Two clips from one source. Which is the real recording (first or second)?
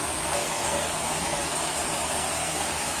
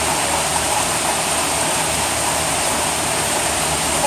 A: second